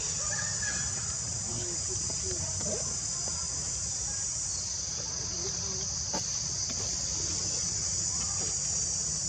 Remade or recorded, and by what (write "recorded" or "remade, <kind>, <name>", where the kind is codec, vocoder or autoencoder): recorded